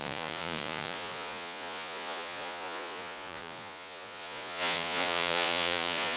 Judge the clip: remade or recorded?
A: remade